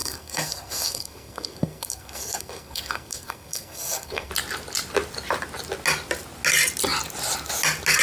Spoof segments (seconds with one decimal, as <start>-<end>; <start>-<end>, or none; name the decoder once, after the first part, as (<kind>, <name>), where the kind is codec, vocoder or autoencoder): 0.0-4.3 (codec, SNAC)